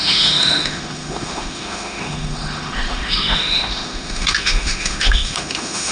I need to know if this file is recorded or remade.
remade